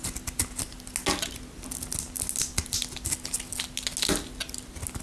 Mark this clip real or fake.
real